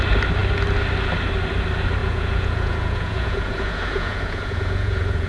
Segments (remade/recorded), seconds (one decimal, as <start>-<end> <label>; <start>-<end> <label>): 0.0-2.0 recorded; 2.0-5.3 remade